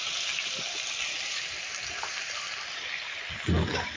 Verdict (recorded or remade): recorded